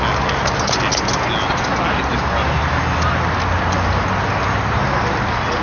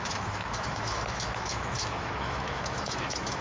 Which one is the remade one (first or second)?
second